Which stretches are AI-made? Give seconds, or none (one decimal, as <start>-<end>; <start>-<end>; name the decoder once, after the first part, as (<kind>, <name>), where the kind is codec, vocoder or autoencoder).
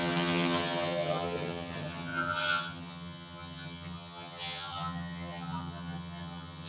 0.0-6.7 (vocoder, HiFi-GAN)